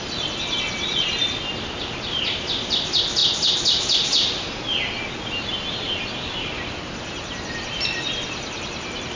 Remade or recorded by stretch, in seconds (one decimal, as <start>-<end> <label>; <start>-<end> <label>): 0.0-9.2 recorded